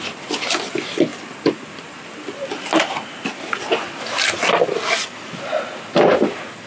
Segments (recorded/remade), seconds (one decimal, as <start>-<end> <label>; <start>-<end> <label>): 0.0-6.7 recorded